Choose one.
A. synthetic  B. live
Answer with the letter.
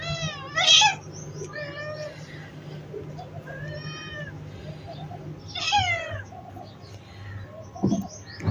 B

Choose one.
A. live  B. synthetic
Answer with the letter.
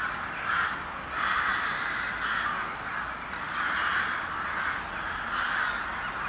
A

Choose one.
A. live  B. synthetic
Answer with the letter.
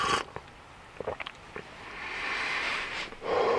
A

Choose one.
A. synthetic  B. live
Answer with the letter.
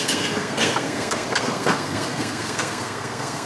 A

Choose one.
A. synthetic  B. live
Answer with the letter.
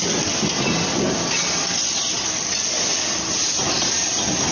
B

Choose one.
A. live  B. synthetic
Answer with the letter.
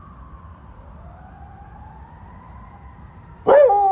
A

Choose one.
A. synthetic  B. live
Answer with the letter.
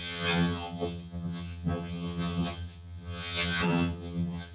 A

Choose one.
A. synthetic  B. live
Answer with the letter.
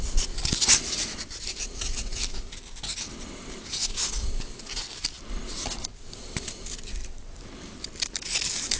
B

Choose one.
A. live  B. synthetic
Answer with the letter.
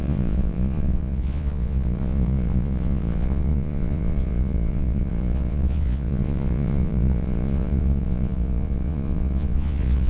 B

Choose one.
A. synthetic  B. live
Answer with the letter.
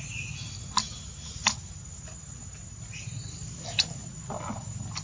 B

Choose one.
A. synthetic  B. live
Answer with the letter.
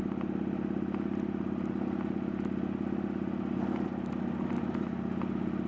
B